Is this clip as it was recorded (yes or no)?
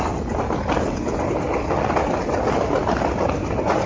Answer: yes